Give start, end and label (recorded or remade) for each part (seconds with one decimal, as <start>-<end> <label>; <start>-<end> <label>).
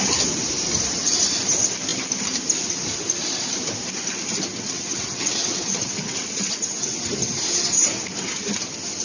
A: 0.0-4.5 recorded; 4.5-7.0 remade; 7.0-9.0 recorded